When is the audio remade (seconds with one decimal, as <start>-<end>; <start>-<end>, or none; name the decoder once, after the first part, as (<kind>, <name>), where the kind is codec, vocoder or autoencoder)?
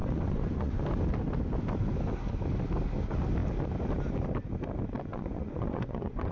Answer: 0.0-0.8 (vocoder, Vocos); 5.1-6.3